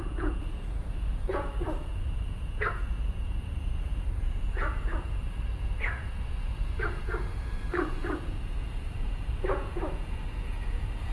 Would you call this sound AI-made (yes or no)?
yes